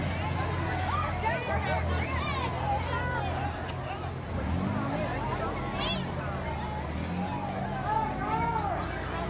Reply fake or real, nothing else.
real